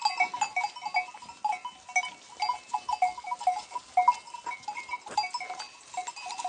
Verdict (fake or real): real